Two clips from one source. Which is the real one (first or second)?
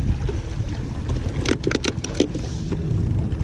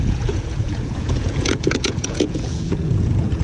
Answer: first